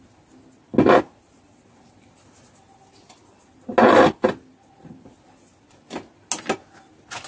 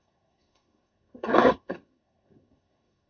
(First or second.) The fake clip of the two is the second